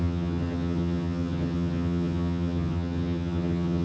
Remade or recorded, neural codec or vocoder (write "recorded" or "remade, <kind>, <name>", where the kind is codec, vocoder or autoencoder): remade, vocoder, HiFi-GAN